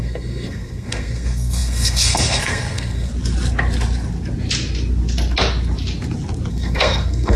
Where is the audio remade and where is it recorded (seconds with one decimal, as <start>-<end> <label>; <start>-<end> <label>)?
0.0-3.1 remade; 3.1-6.5 recorded; 6.5-7.4 remade